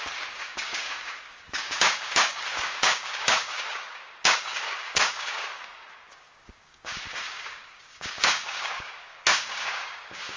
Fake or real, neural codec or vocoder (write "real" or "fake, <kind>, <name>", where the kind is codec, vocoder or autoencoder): fake, codec, DAC